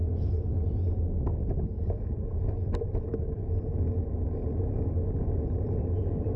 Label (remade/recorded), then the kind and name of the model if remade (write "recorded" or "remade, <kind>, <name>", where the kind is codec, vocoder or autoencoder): recorded